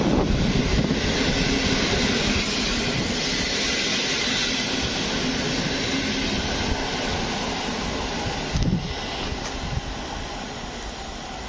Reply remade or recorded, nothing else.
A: recorded